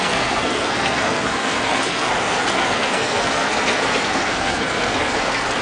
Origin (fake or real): fake